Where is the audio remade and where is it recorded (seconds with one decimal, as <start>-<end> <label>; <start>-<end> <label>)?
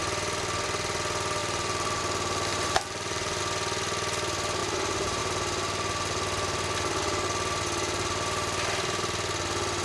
0.0-1.4 recorded; 1.4-2.0 remade; 2.0-2.5 recorded; 2.5-3.4 remade; 3.4-4.6 recorded; 4.6-5.2 remade; 5.2-9.8 recorded